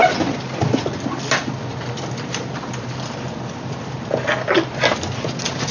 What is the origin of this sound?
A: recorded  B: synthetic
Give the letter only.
A